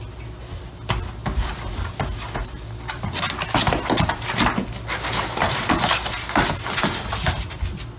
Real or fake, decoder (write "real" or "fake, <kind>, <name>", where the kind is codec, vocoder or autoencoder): real